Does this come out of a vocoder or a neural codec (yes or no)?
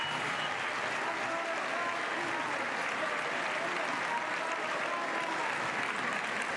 no